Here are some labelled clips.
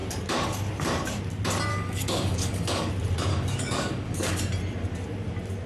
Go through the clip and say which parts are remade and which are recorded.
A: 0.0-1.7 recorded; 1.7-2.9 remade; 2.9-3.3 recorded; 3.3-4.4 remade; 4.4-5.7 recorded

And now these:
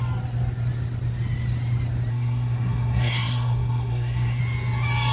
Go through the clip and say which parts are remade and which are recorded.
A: 0.0-2.1 recorded; 2.1-4.4 remade; 4.4-5.1 recorded

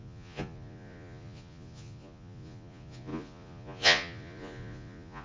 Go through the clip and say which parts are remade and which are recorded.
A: 0.0-5.2 remade